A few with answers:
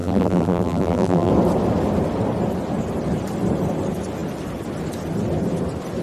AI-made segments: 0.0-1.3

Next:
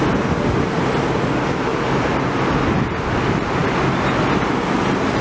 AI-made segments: none